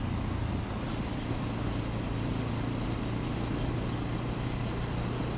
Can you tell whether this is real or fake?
real